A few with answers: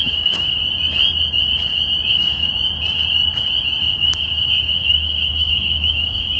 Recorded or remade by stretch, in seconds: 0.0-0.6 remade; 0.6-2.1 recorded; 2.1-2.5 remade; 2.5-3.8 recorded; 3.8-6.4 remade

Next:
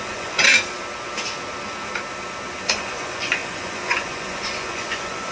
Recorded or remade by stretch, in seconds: 0.0-0.5 remade; 0.5-2.7 recorded; 2.7-5.3 remade

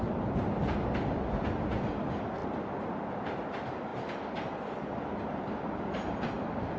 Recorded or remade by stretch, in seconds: 0.0-6.8 recorded

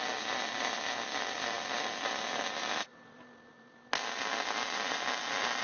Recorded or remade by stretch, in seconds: 0.0-5.6 recorded

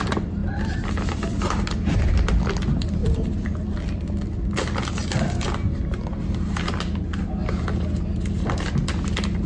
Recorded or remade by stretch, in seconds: 0.0-0.4 recorded; 0.4-2.3 remade; 2.3-3.0 recorded; 3.0-4.5 remade; 4.5-5.0 recorded; 5.0-6.1 remade; 6.1-9.5 recorded

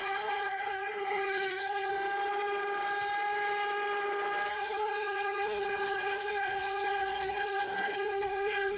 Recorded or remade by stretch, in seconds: 0.0-1.9 remade; 1.9-4.5 recorded; 4.5-8.8 remade

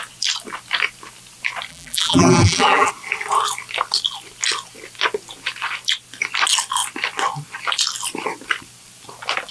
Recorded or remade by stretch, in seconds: 0.0-1.7 recorded; 1.7-2.9 remade; 2.9-9.5 recorded